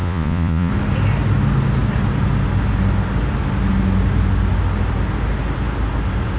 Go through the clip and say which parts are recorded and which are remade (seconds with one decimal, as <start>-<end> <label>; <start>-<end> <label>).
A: 0.0-0.7 remade; 0.7-6.4 recorded